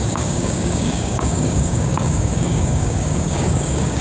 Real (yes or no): no